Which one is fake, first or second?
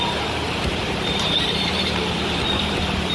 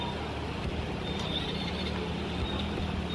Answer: first